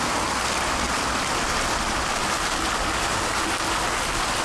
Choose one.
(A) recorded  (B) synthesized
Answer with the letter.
A